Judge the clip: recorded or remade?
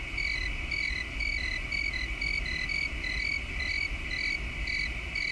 recorded